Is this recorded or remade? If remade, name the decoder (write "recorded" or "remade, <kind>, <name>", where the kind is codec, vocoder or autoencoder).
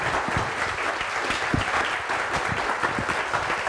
remade, vocoder, BigVGAN v2